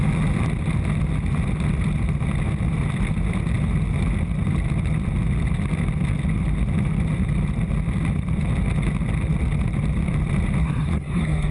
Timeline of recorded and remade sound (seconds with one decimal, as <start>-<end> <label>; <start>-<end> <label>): 0.0-10.6 recorded; 10.6-11.5 remade